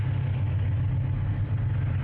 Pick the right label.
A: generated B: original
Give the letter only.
B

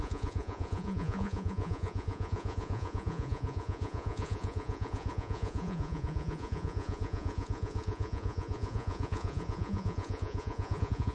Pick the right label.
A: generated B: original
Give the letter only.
A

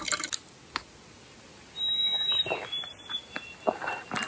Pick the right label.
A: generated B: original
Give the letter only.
B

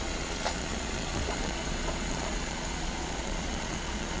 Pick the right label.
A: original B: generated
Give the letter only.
B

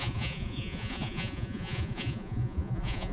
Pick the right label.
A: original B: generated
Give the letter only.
B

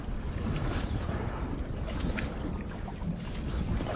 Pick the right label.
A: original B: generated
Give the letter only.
A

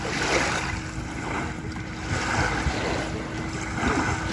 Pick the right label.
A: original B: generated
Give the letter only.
A